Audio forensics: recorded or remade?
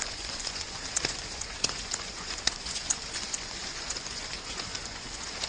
remade